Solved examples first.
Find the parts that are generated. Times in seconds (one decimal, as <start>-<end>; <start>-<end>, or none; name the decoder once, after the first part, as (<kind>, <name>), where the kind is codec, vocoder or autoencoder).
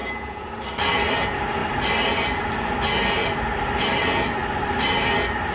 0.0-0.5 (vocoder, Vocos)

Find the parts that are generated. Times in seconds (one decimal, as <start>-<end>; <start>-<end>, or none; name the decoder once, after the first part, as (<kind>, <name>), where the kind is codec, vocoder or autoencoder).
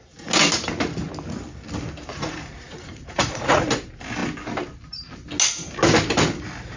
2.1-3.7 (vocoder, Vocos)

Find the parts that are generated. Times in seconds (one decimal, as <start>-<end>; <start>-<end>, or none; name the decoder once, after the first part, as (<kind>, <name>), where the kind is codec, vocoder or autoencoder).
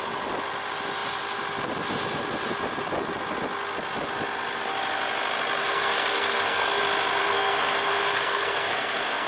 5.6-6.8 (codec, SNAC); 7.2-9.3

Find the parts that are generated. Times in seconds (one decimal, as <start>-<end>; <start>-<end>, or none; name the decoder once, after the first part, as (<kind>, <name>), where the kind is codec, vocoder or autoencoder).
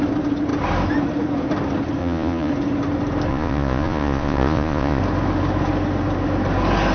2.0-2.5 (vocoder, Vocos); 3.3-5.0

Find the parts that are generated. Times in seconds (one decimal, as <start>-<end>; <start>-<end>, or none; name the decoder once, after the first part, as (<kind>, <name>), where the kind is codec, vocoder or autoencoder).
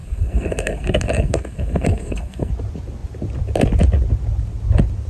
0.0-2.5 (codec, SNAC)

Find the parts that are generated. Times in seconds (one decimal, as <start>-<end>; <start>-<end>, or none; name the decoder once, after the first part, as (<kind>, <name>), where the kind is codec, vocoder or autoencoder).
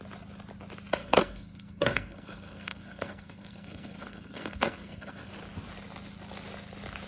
1.0-5.3 (codec, SNAC)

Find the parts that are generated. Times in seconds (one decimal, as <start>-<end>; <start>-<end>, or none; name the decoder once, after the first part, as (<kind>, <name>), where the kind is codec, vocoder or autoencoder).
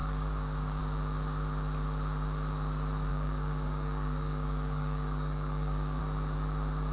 0.0-0.8 (codec, DAC); 3.1-6.0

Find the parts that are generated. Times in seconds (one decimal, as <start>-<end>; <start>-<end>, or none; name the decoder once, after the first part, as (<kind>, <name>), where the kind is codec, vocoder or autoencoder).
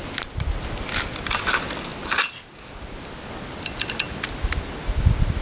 none